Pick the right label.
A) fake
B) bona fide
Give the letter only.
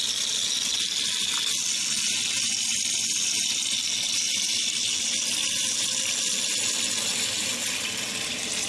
B